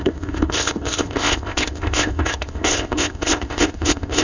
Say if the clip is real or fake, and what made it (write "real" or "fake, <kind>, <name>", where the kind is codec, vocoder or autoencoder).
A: fake, codec, ZipCodec